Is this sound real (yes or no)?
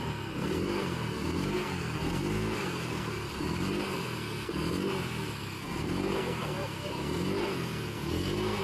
no